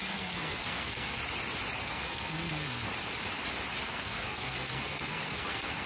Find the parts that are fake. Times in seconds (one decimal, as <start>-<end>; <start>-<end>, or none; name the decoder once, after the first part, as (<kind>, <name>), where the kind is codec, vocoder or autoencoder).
0.0-1.2 (codec, SNAC); 1.8-2.9; 3.8-5.9